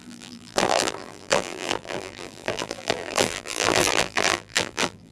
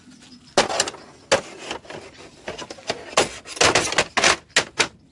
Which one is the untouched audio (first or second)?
second